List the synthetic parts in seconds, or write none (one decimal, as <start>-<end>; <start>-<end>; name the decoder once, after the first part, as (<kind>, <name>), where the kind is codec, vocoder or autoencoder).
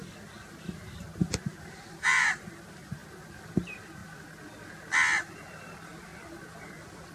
1.0-3.0 (vocoder, BigVGAN v2); 3.5-4.0; 5.3-7.1